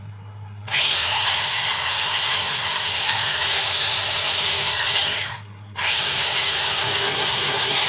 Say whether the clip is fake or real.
fake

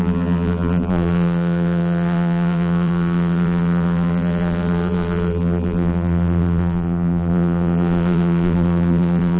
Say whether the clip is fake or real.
fake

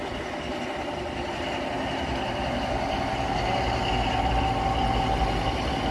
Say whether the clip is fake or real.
real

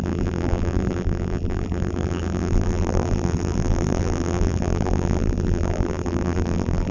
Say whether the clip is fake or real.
fake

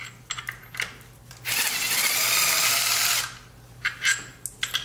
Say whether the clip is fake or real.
real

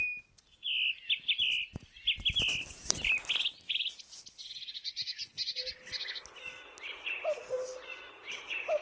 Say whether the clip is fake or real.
real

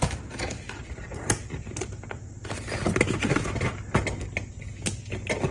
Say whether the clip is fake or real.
real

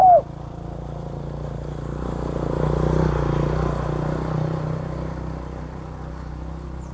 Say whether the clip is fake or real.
real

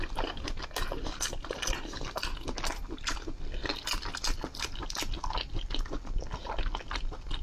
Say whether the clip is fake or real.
real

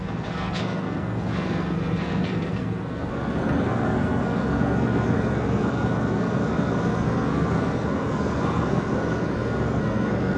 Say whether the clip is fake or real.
fake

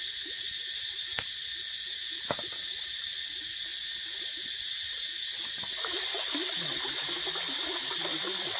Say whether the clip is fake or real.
real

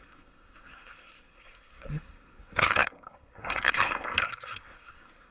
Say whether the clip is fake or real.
fake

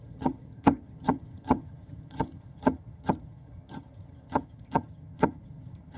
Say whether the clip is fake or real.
fake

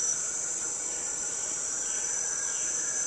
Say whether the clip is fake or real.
real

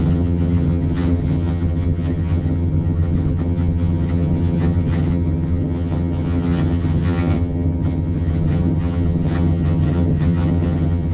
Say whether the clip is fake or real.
fake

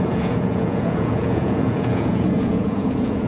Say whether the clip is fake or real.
fake